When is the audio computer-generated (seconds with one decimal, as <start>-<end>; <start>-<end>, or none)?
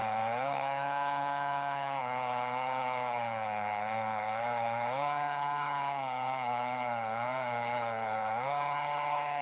0.0-9.4